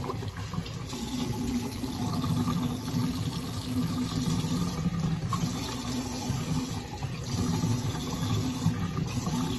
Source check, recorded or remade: recorded